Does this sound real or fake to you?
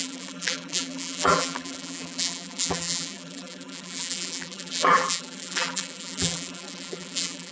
fake